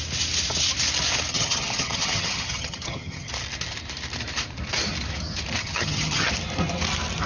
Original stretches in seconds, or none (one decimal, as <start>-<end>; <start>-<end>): 0.0-1.3; 3.3-5.6; 6.3-7.3